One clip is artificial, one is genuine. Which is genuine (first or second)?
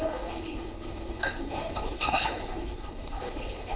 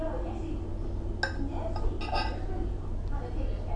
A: second